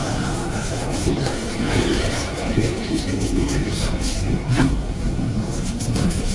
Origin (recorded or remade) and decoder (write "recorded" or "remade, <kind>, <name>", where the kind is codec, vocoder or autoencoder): remade, codec, SNAC